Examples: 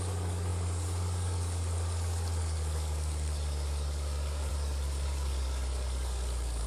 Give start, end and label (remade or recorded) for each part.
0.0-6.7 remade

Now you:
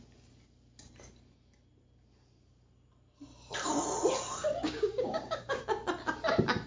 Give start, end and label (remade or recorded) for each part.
0.0-4.4 recorded; 4.4-5.6 remade; 5.6-6.7 recorded

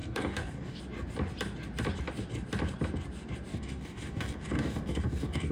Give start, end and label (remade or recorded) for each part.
0.0-0.8 remade; 0.8-3.5 recorded; 3.5-5.5 remade

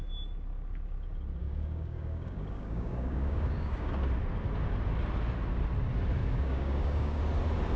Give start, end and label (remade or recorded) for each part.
0.0-1.4 recorded; 1.4-3.9 remade; 3.9-6.2 recorded; 6.2-7.2 remade; 7.2-7.8 recorded

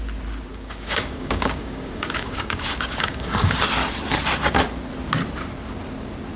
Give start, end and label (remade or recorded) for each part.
0.0-0.5 recorded; 0.5-3.6 remade; 3.6-6.4 recorded

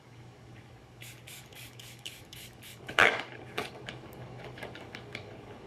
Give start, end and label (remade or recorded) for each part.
0.0-5.7 remade